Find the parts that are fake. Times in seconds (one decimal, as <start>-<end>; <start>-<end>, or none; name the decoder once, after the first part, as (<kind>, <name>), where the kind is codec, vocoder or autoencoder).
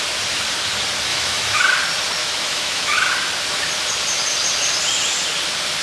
1.1-1.6 (autoencoder, DAC-VAE); 2.2-3.1